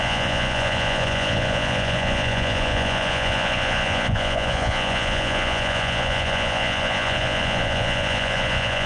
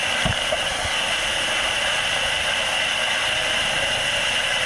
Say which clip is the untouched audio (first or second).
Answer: second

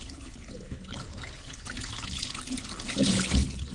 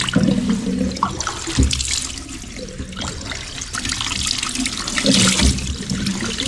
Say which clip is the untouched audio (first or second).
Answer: second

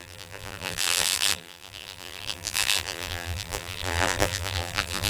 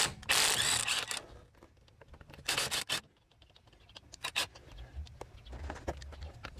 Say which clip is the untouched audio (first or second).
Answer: second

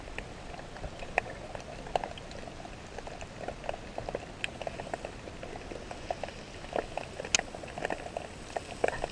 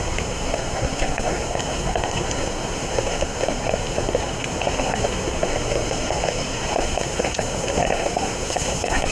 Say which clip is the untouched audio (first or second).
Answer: first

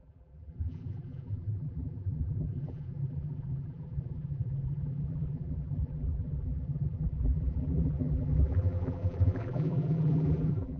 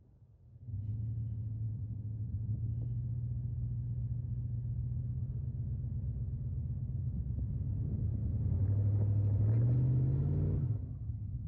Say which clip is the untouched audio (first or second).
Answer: second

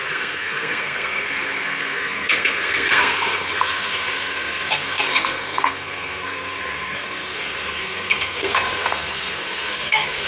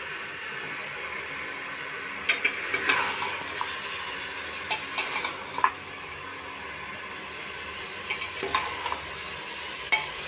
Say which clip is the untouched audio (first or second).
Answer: second